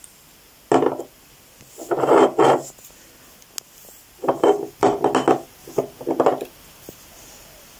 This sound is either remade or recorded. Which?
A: recorded